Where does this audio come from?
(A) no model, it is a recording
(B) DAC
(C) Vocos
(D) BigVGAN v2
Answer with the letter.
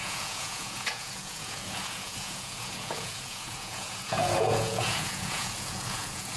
C